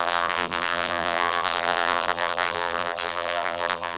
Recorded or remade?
remade